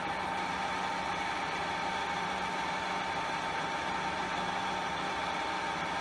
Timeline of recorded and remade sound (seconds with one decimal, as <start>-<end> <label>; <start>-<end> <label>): 0.0-6.0 recorded